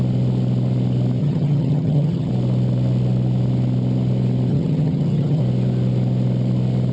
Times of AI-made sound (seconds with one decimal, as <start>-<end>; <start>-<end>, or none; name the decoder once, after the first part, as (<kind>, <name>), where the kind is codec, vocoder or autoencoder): 1.2-2.3 (vocoder, HiFi-GAN); 4.5-5.4